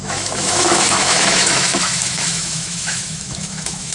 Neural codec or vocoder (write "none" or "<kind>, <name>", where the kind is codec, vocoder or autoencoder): autoencoder, DAC-VAE